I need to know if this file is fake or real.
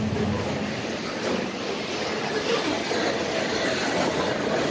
real